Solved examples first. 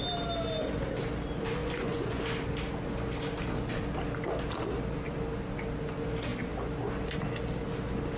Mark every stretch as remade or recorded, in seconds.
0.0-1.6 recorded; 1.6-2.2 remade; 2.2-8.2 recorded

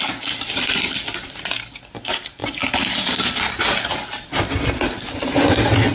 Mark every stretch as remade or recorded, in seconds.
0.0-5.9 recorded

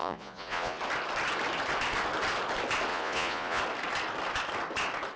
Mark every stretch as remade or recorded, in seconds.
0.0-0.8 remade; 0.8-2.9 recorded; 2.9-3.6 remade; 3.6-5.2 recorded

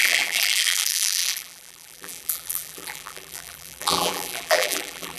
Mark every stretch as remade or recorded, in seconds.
0.0-5.2 remade

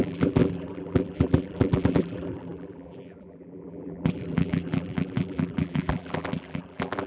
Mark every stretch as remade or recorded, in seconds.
0.0-7.1 remade